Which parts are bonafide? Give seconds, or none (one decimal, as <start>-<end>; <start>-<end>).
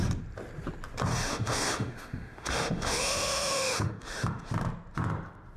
0.0-1.1; 4.5-5.6